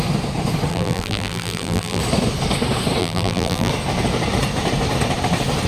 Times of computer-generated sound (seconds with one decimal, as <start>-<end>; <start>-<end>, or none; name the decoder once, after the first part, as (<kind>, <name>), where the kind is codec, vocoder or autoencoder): 0.7-2.0 (vocoder, BigVGAN v2); 3.0-3.7